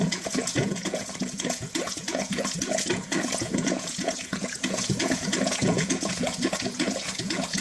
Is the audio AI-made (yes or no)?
yes